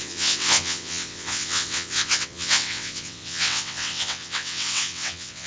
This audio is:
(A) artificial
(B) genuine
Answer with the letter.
A